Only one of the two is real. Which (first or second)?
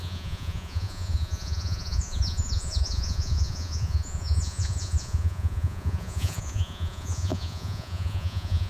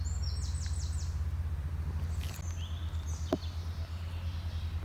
second